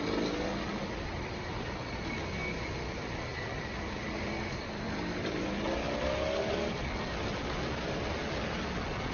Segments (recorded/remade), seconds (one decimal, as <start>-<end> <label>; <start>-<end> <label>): 0.0-3.3 recorded; 3.3-5.4 remade; 5.4-9.1 recorded